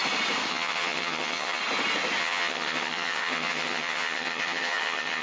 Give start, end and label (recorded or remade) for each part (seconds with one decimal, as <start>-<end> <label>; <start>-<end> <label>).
0.0-0.5 recorded; 0.5-1.6 remade; 1.6-2.2 recorded; 2.2-5.2 remade